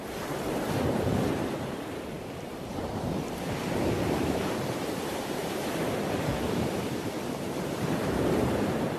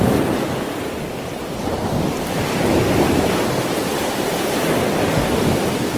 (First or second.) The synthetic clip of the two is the first